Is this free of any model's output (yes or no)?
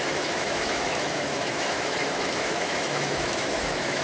no